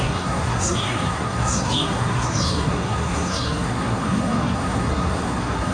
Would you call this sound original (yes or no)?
no